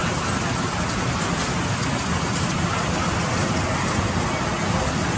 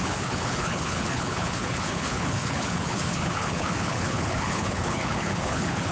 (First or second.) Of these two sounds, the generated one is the second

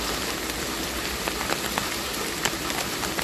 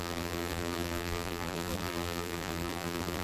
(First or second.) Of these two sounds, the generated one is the second